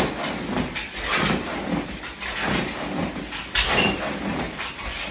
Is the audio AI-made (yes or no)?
no